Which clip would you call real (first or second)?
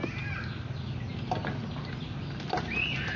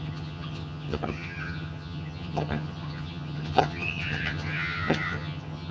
first